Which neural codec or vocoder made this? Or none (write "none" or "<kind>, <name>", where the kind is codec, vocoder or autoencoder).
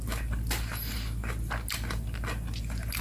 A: none